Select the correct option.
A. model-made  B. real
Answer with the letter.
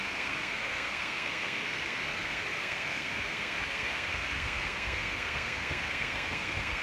A